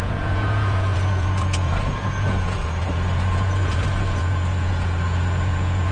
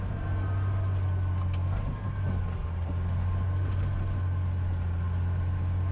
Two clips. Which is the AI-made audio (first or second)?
first